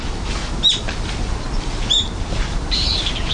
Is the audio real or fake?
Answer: fake